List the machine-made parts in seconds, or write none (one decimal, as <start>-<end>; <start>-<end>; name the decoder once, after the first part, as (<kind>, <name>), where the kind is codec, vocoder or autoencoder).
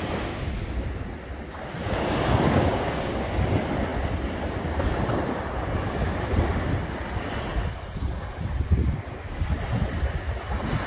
1.8-3.3 (codec, DAC)